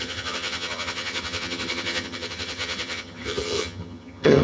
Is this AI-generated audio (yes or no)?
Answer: yes